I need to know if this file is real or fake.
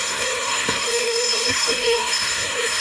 fake